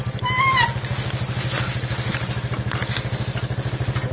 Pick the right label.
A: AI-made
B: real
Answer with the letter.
B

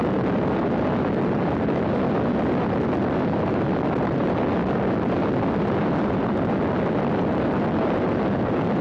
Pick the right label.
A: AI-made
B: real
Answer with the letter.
B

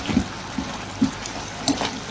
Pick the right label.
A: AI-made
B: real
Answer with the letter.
B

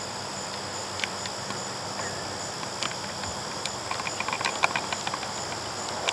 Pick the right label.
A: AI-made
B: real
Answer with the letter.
B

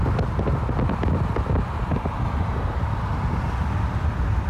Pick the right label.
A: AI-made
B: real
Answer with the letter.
B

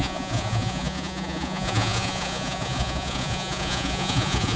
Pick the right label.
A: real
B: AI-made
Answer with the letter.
B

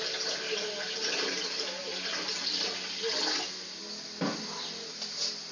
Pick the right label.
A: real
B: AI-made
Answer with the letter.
A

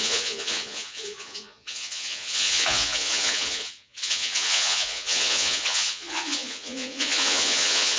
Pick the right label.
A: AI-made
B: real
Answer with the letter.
A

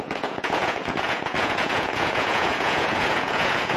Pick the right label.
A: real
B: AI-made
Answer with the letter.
B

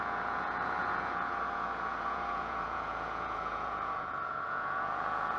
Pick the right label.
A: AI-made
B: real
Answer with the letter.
A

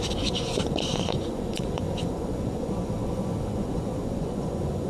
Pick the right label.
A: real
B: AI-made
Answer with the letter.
B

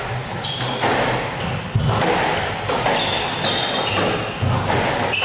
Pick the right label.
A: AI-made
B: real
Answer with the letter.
B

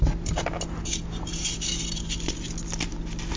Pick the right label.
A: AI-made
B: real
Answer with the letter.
B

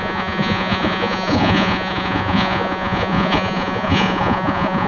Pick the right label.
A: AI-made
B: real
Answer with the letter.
A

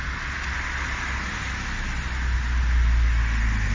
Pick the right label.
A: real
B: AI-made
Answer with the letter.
A